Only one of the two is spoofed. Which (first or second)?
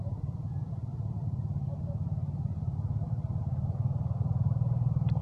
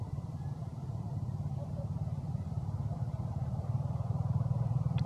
second